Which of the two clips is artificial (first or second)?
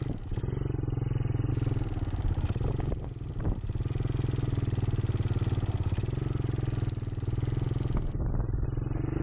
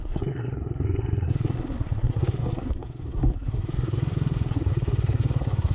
second